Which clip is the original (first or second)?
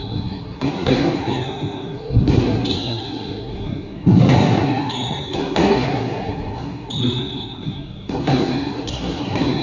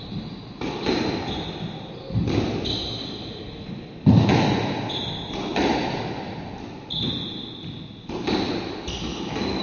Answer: second